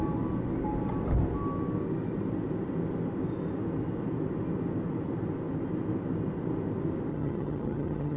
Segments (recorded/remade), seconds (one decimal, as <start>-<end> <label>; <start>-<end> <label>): 0.0-7.1 recorded; 7.1-8.2 remade